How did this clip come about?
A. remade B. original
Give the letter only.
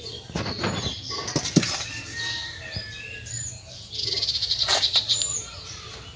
B